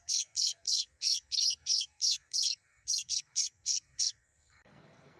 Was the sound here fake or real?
fake